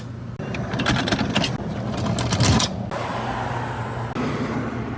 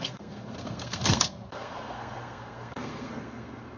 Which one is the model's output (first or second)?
second